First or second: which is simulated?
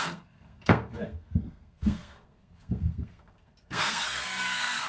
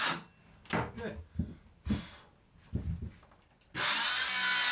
first